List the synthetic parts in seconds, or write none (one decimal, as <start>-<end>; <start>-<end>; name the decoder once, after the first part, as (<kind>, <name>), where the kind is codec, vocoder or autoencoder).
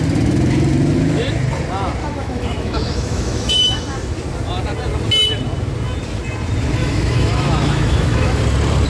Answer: 2.0-3.8 (autoencoder, DAC-VAE); 6.8-8.4